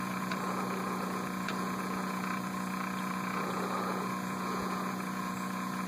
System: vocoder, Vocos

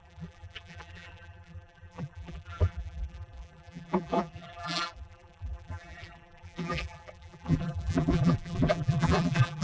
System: vocoder, BigVGAN v2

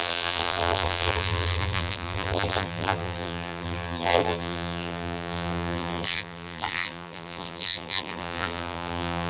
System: vocoder, BigVGAN v2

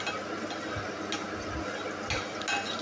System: none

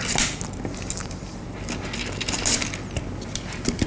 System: none